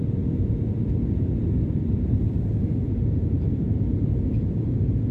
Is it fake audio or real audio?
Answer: real